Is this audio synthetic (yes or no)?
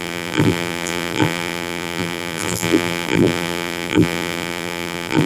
yes